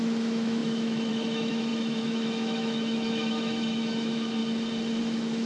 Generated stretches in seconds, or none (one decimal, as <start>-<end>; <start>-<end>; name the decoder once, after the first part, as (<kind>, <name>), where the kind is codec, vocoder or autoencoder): 0.0-4.4 (autoencoder, DAC-VAE); 5.0-5.5